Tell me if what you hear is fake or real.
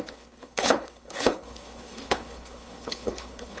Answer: fake